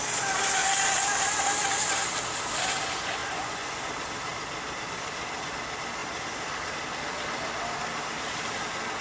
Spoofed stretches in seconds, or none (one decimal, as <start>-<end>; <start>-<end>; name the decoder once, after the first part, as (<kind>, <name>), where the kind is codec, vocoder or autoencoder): 3.2-3.8 (vocoder, Vocos)